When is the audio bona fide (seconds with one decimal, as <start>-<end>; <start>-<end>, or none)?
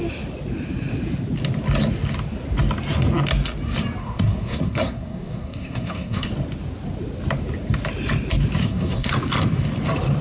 0.0-4.0; 6.3-8.6; 9.1-10.2